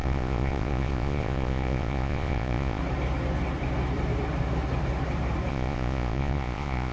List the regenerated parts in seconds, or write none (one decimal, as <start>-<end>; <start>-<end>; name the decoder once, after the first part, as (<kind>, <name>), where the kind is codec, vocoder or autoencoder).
0.0-2.8 (vocoder, Vocos); 5.5-6.9